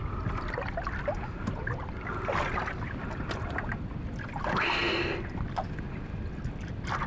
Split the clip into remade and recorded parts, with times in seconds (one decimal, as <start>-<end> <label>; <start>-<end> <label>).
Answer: 0.0-7.1 recorded